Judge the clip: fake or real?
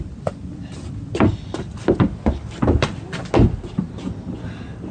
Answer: real